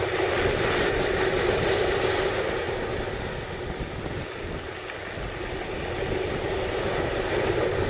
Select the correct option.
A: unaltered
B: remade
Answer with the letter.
A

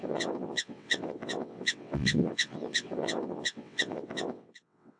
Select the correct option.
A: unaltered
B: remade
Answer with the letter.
B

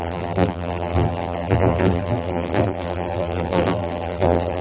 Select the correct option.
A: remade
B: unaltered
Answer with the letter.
A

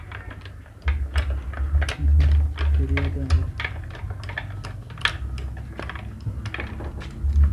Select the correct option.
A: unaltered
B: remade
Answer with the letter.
A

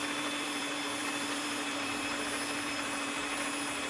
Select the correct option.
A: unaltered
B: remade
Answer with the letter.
B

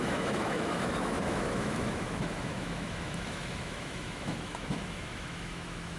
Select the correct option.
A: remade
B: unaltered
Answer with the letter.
A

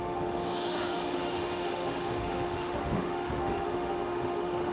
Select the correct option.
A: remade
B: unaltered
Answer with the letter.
A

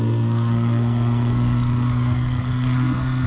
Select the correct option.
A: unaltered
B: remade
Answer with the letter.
B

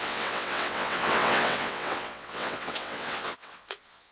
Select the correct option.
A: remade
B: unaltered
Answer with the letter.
A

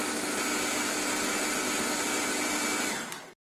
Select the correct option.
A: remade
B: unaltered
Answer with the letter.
B